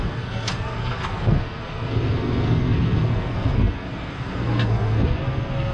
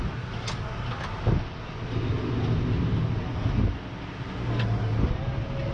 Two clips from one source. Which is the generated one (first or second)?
first